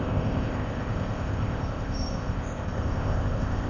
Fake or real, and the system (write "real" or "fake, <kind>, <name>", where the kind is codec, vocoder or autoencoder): fake, codec, ZipCodec